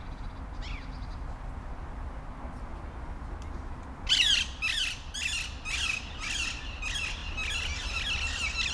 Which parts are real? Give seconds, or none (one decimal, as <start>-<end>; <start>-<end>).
0.0-8.7